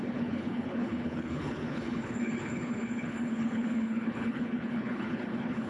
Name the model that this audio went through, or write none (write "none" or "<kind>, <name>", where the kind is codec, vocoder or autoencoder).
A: codec, HILCodec